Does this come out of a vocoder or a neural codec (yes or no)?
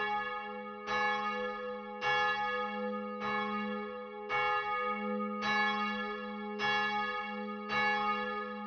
no